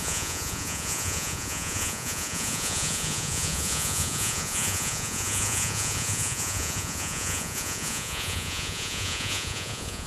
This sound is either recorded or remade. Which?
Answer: remade